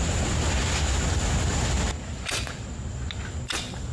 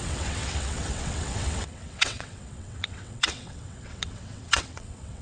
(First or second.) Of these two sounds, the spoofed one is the second